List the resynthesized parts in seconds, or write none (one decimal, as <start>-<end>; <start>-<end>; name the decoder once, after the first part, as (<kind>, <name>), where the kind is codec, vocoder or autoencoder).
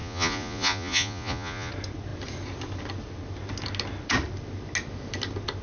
0.0-1.7 (vocoder, Vocos)